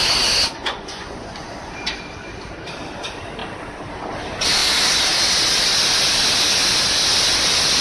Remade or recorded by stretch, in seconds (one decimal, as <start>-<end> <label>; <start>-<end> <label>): 0.0-0.6 recorded; 0.6-1.7 remade; 1.7-7.8 recorded